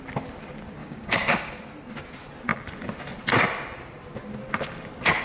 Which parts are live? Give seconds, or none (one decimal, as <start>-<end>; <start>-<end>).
0.0-0.8; 1.5-5.2